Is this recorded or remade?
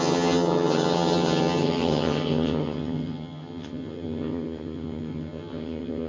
remade